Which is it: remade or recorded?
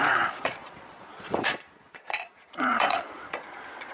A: remade